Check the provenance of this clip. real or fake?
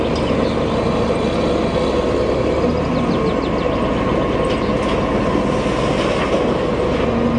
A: real